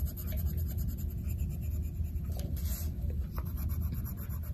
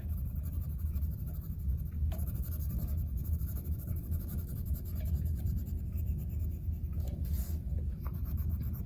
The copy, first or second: second